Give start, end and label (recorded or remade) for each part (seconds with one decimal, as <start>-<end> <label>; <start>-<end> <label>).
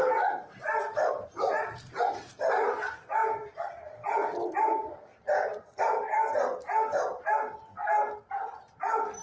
0.0-9.2 recorded